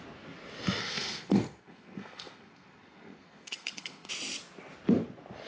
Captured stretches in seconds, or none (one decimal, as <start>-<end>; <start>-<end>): 0.0-0.8; 4.1-5.5